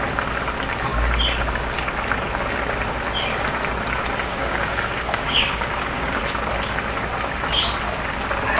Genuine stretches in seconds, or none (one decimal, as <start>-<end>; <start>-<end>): 0.0-4.3; 6.2-8.6

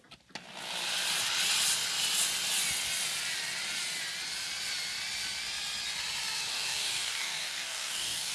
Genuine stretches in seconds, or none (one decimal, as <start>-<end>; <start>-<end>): 0.0-6.5

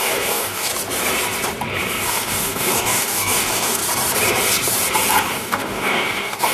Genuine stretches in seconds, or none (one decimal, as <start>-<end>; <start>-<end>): 0.7-2.1; 3.8-5.3

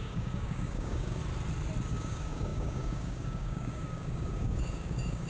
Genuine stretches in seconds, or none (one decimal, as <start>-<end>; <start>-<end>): 1.2-1.9

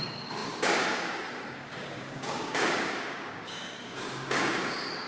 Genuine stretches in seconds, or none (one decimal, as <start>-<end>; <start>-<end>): none

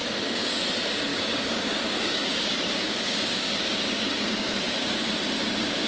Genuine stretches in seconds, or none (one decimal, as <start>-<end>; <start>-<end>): 0.6-1.1; 4.6-5.9

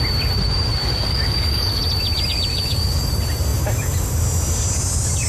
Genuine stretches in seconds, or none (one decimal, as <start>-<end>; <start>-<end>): 0.0-0.8; 1.8-2.5; 3.0-5.3

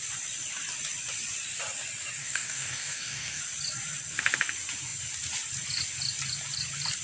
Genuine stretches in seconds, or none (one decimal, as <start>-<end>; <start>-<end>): 0.0-2.2; 3.4-7.0